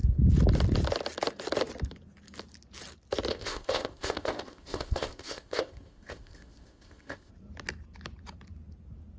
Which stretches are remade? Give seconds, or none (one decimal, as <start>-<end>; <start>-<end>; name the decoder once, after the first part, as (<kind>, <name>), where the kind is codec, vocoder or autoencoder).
3.3-7.3 (codec, ZipCodec)